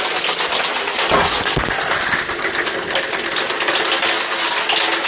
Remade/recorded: recorded